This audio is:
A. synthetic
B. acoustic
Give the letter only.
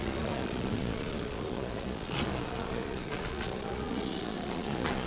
A